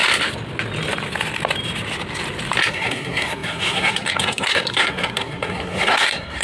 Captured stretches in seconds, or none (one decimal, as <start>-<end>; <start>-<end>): 0.0-2.7